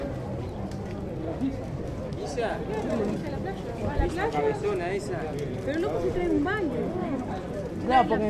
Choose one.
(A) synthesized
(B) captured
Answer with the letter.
B